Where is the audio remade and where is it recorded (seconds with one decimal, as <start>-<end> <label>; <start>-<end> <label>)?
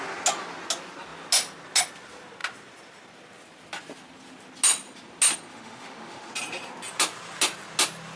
0.0-5.5 recorded; 5.5-6.3 remade; 6.3-8.2 recorded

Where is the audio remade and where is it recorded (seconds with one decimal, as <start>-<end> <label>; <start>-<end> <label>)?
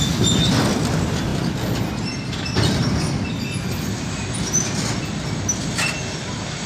0.0-6.7 recorded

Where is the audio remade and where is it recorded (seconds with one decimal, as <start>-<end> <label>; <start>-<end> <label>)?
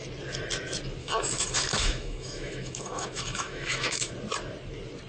0.0-1.0 recorded; 1.0-4.1 remade; 4.1-5.1 recorded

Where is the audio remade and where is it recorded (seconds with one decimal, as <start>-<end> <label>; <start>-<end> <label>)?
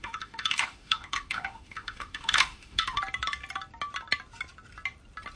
0.0-3.0 remade; 3.0-5.4 recorded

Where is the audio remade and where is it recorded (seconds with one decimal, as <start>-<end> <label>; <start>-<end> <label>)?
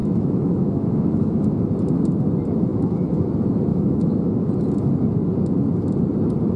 0.0-1.6 remade; 1.6-2.7 recorded; 2.7-3.3 remade; 3.3-3.7 recorded; 3.7-4.5 remade; 4.5-6.6 recorded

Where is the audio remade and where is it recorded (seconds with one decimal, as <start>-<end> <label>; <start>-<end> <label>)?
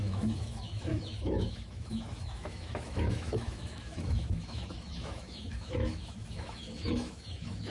0.0-7.7 remade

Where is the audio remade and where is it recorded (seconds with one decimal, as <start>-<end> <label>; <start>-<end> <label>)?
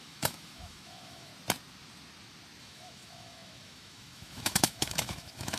0.0-1.3 remade; 1.3-2.6 recorded; 2.6-5.6 remade